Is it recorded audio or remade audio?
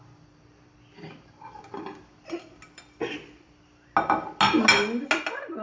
recorded